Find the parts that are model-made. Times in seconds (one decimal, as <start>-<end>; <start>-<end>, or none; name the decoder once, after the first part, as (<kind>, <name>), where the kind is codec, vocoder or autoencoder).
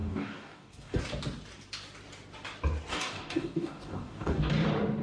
0.0-1.0 (codec, DAC); 2.9-4.5